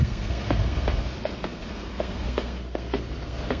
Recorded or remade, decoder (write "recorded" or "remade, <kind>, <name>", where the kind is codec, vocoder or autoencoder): remade, codec, SNAC